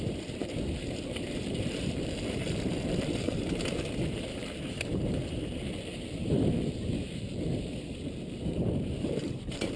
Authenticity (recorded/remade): remade